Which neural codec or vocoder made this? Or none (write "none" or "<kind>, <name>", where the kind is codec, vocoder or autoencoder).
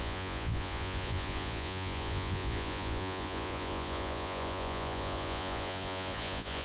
vocoder, Vocos